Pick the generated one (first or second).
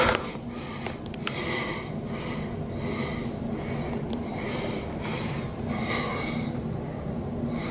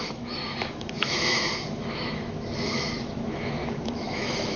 second